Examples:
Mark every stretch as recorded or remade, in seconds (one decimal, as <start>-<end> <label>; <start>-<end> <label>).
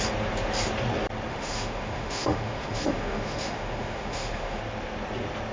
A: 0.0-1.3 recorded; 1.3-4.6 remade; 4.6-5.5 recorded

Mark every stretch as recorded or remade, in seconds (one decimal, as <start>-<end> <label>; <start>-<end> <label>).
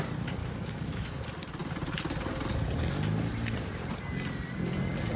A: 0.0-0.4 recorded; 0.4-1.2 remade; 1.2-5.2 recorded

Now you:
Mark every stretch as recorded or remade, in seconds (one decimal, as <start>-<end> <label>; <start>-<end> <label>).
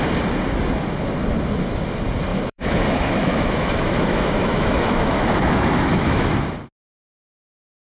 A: 0.0-2.3 recorded; 2.3-6.3 remade; 6.3-7.8 recorded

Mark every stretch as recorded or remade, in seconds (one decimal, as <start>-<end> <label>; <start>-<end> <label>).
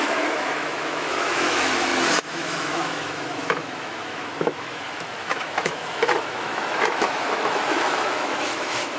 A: 0.0-9.0 remade